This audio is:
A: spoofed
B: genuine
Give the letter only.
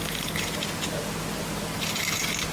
B